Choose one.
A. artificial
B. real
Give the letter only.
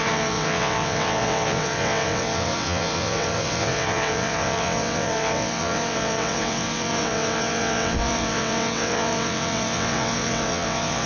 A